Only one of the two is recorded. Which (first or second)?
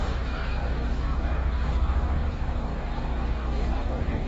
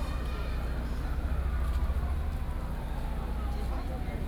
second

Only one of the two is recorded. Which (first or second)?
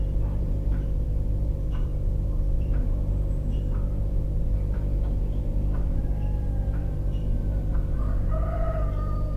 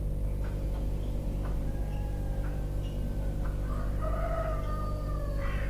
second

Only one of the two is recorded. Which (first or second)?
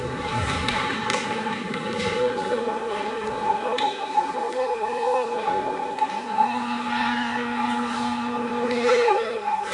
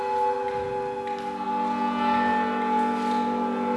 second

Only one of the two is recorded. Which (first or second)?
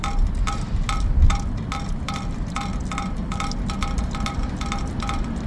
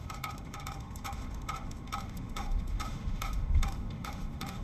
first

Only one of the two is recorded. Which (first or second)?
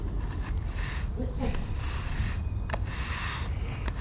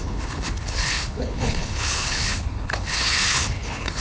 first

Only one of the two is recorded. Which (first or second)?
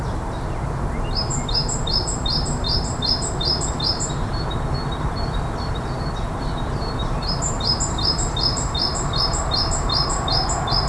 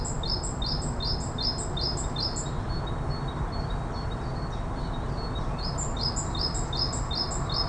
second